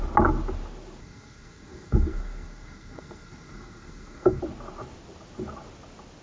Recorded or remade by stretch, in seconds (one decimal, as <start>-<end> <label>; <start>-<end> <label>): 0.0-1.0 recorded; 1.0-4.4 remade; 4.4-6.2 recorded